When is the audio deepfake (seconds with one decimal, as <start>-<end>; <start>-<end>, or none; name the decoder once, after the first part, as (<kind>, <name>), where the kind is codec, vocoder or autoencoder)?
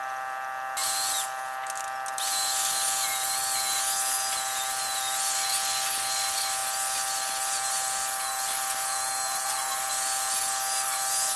none